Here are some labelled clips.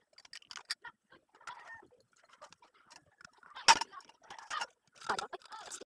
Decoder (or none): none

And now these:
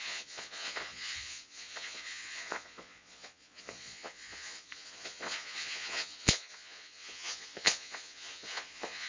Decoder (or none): vocoder, Vocos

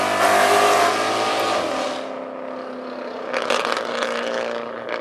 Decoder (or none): none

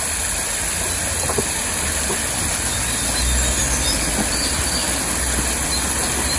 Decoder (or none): none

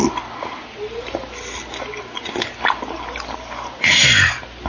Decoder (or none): none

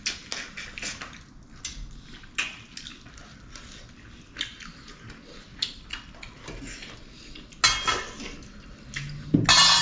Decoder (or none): none